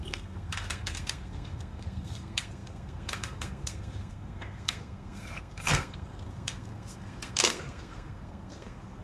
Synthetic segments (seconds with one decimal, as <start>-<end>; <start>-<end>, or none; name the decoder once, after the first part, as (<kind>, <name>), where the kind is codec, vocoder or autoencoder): 0.0-9.0 (codec, SNAC)